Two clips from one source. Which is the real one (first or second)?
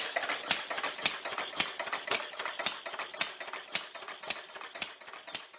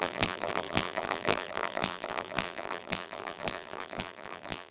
first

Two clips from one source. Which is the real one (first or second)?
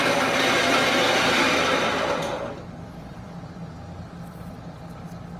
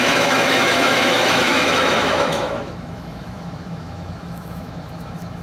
first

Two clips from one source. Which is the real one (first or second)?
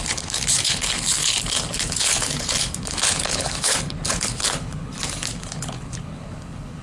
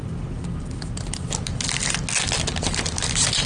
second